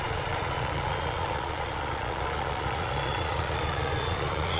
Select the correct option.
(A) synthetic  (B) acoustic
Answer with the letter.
A